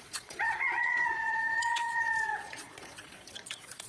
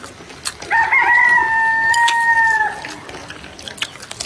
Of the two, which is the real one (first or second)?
second